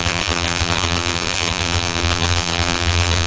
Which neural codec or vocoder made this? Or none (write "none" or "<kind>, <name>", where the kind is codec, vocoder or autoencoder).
vocoder, BigVGAN v2